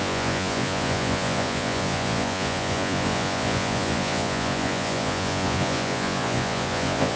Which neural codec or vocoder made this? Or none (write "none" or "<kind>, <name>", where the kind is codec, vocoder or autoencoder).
vocoder, Vocos